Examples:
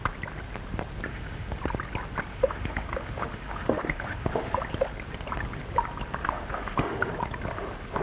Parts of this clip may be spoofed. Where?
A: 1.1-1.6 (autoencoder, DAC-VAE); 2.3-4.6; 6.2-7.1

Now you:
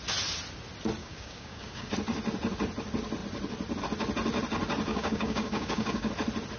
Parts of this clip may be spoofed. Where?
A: 1.0-1.9 (codec, DAC); 4.9-6.1

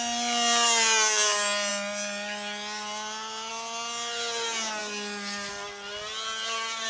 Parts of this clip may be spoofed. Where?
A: none

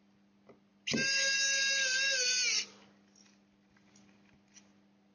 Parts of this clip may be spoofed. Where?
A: none

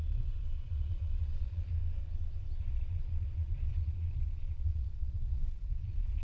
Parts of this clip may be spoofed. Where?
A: 0.0-1.7 (vocoder, Vocos); 2.6-6.2

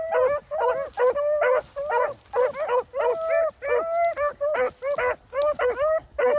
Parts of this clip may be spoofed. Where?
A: none

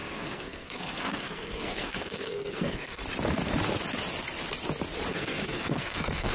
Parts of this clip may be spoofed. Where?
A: 0.0-3.0 (codec, SNAC); 5.1-6.3

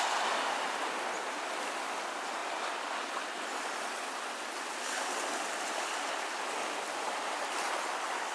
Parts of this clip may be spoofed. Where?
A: none